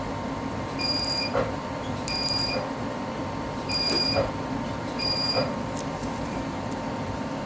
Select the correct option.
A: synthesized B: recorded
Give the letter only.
A